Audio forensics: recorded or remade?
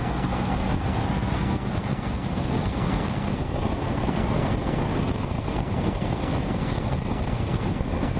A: remade